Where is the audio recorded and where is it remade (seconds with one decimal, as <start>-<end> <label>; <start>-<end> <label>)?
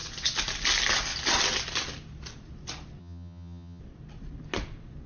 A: 0.0-3.0 recorded; 3.0-3.8 remade; 3.8-5.1 recorded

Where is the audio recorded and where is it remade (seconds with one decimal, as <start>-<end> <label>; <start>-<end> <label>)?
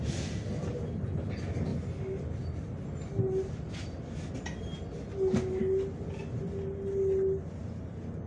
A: 0.0-8.3 recorded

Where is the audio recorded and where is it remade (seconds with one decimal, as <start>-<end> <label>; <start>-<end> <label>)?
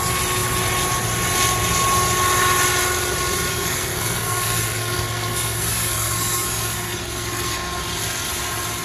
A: 0.0-3.5 recorded; 3.5-7.8 remade; 7.8-8.8 recorded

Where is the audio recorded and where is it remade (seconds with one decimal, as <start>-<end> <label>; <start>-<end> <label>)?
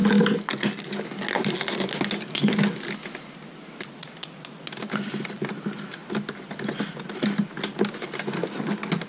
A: 0.0-9.1 recorded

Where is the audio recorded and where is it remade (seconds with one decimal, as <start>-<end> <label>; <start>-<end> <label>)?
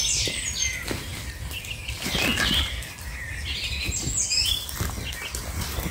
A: 0.0-5.9 recorded